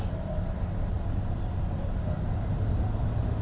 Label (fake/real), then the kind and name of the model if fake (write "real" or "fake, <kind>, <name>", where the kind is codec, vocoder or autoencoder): real